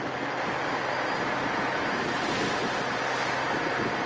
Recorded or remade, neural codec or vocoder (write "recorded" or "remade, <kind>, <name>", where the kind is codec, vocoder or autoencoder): recorded